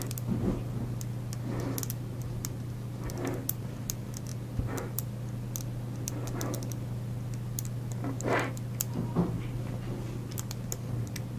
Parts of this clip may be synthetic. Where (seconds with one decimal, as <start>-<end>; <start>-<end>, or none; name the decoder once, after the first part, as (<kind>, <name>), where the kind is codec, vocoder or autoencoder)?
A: none